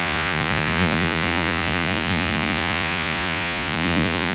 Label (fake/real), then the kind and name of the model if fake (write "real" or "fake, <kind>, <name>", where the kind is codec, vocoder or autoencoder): fake, vocoder, Vocos